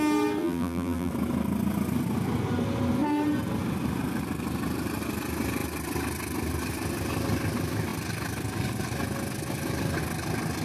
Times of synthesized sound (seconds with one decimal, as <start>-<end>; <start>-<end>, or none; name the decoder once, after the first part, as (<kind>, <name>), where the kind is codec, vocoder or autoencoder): 0.4-1.1 (vocoder, BigVGAN v2)